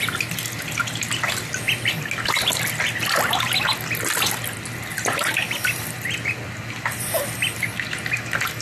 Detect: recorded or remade recorded